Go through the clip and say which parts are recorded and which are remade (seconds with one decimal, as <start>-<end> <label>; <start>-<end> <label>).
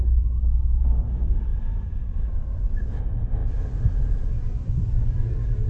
0.0-5.7 recorded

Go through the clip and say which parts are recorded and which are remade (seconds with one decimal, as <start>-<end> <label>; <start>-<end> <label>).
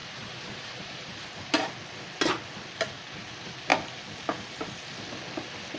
0.0-1.7 remade; 1.7-5.8 recorded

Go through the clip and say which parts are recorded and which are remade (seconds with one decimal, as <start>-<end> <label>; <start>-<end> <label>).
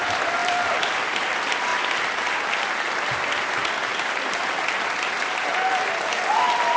0.0-0.4 recorded; 0.4-0.9 remade; 0.9-6.8 recorded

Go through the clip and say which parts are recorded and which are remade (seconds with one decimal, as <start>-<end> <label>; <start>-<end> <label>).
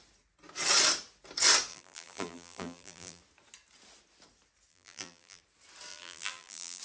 0.0-1.7 recorded; 1.7-3.2 remade; 3.2-4.7 recorded; 4.7-5.4 remade; 5.4-5.9 recorded; 5.9-6.8 remade